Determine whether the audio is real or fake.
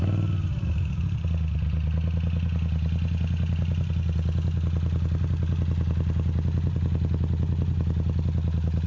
real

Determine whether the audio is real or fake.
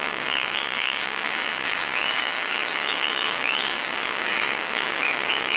fake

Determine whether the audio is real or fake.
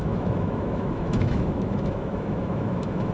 fake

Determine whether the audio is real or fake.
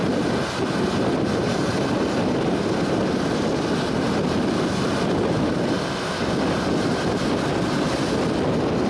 real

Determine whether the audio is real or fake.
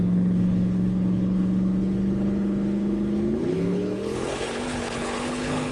fake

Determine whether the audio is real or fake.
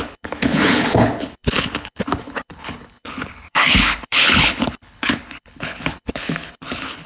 fake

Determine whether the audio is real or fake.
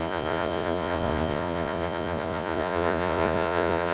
fake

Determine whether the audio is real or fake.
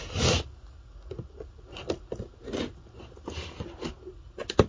real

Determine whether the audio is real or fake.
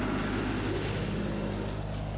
real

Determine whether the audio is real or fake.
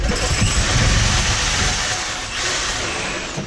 real